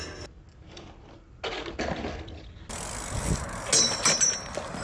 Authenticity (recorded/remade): recorded